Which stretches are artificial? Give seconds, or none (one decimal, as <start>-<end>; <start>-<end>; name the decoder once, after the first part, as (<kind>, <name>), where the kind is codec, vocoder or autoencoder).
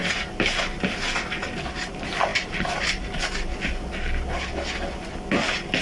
2.3-3.2 (vocoder, BigVGAN v2)